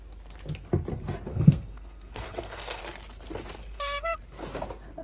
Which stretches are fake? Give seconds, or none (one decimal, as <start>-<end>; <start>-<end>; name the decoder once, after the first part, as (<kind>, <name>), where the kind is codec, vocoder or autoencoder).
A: 1.3-2.8 (codec, SNAC); 3.6-4.2